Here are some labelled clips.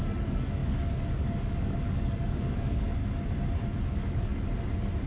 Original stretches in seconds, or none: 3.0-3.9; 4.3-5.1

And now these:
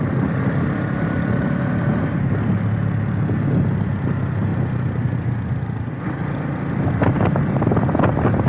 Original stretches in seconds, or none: 0.0-8.5

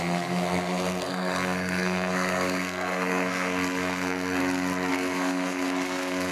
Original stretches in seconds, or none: 4.4-4.9

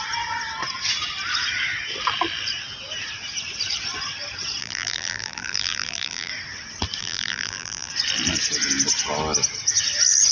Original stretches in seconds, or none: 0.0-4.6; 6.3-7.0; 7.9-10.3